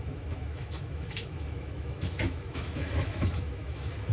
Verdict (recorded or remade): remade